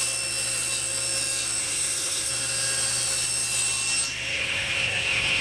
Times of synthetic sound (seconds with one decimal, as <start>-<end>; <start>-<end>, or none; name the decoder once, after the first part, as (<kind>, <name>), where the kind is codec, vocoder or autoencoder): 1.6-2.3 (codec, SNAC); 4.3-5.4